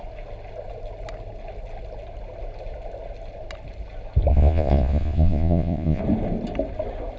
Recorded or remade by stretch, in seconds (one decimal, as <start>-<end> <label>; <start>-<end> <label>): 0.0-4.3 recorded; 4.3-6.0 remade; 6.0-7.2 recorded